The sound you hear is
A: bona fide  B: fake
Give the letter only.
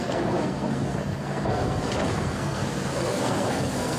B